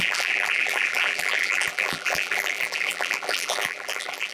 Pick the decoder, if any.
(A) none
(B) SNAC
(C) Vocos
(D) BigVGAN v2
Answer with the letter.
D